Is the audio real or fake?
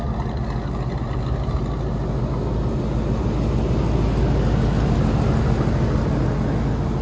real